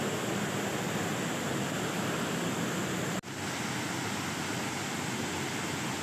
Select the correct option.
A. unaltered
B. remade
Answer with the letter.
A